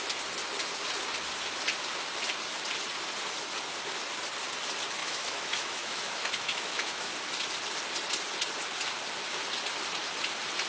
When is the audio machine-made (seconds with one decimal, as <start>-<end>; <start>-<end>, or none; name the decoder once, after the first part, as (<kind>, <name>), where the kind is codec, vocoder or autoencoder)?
5.0-7.1 (autoencoder, DAC-VAE)